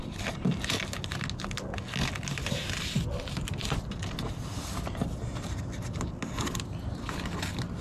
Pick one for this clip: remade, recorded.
recorded